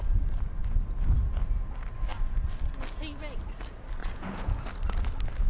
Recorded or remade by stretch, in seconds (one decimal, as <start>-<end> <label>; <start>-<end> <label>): 0.0-4.0 recorded; 4.0-4.6 remade; 4.6-5.5 recorded